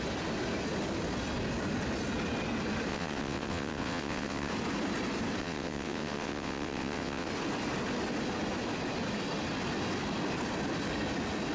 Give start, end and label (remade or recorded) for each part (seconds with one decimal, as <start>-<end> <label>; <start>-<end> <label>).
0.0-2.9 recorded; 2.9-4.5 remade; 4.5-5.4 recorded; 5.4-7.3 remade; 7.3-11.5 recorded